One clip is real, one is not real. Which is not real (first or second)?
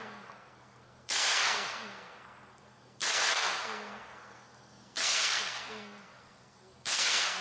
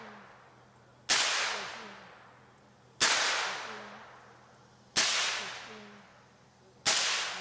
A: first